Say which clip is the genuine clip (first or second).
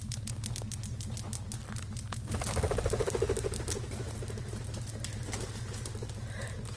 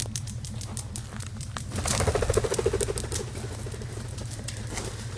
first